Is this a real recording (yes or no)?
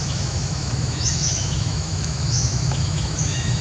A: no